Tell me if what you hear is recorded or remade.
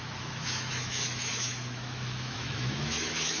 remade